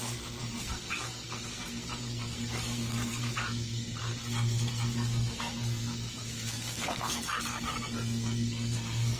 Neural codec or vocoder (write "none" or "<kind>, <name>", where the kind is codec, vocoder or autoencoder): codec, SNAC